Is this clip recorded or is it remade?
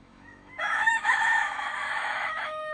remade